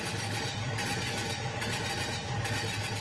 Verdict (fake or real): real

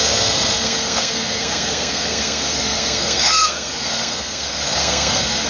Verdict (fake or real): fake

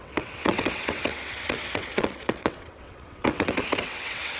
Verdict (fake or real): fake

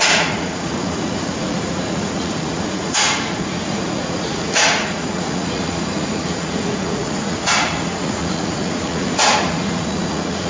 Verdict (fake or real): fake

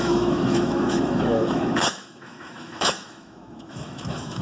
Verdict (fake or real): fake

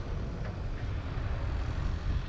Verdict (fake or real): real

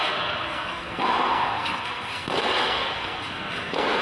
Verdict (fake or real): fake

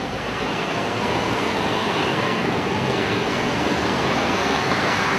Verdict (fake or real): fake